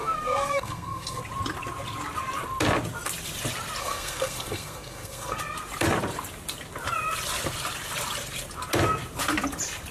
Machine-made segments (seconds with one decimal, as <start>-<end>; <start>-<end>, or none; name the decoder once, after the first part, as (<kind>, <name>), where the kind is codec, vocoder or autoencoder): 0.0-1.2 (codec, SNAC); 3.8-5.4